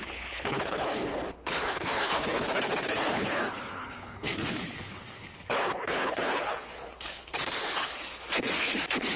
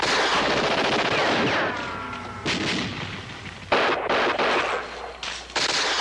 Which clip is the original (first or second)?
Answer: second